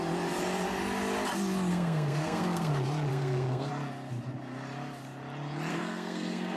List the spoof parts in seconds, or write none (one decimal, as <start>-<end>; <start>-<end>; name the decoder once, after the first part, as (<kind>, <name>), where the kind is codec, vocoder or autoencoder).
1.7-2.7 (codec, SNAC); 3.1-3.7; 5.7-6.6